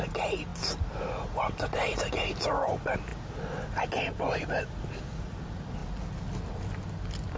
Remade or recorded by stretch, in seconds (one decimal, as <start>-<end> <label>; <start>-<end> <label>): 0.0-7.4 recorded